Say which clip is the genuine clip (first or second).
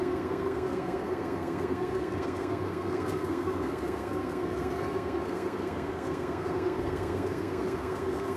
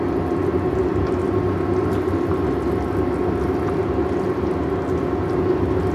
second